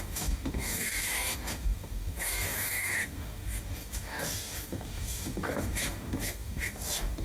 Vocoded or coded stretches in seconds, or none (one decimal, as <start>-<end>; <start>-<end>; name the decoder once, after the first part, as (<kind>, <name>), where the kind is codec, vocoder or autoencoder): 0.0-7.2 (codec, DAC)